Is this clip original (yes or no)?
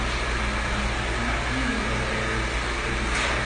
yes